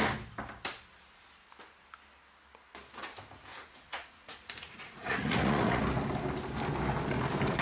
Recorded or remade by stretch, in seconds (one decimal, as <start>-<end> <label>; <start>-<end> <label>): 0.0-3.5 recorded; 3.5-5.8 remade; 5.8-7.6 recorded